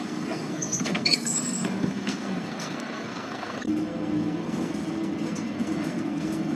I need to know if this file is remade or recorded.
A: remade